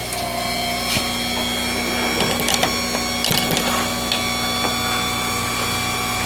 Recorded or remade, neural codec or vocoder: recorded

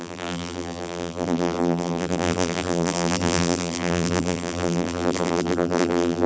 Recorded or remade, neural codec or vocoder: remade, vocoder, BigVGAN v2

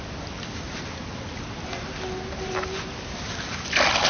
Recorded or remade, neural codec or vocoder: recorded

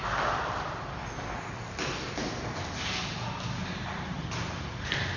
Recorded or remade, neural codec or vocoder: recorded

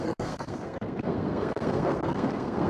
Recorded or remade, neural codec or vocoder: remade, codec, SNAC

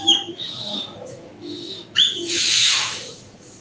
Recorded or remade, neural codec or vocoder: remade, autoencoder, DAC-VAE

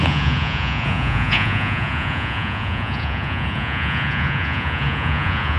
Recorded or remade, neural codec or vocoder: remade, vocoder, Vocos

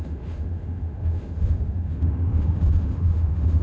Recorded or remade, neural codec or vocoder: remade, autoencoder, DAC-VAE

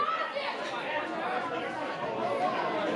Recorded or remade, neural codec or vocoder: recorded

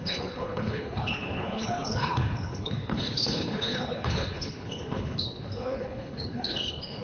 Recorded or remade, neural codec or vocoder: remade, codec, HILCodec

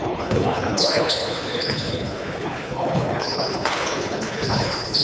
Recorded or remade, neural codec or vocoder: remade, codec, HILCodec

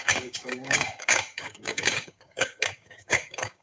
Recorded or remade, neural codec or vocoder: remade, codec, DAC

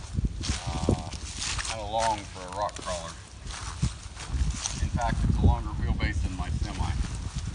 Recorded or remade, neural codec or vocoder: recorded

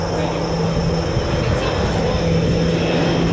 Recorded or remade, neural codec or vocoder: recorded